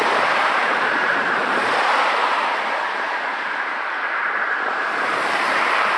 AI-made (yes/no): yes